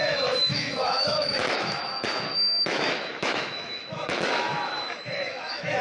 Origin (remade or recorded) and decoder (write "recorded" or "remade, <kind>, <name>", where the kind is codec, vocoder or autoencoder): remade, autoencoder, DAC-VAE